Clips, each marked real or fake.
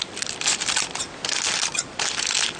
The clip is real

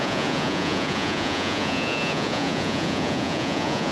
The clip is fake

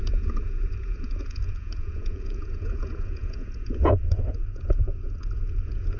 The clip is fake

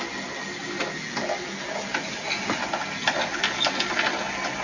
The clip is real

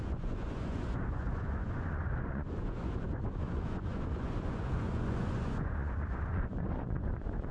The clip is fake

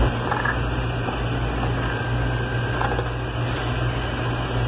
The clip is real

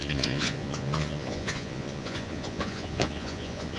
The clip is fake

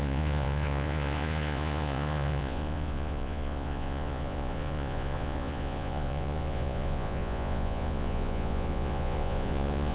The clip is fake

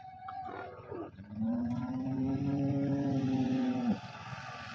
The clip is fake